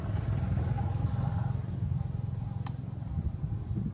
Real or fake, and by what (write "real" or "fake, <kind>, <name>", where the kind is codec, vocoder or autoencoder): real